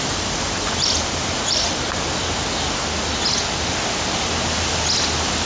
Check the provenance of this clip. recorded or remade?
recorded